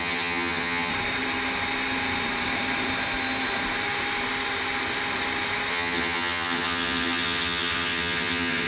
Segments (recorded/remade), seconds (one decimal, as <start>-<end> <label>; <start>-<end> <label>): 0.0-0.9 remade; 0.9-5.7 recorded; 5.7-8.7 remade